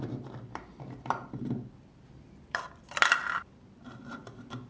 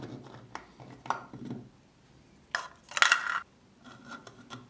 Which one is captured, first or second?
second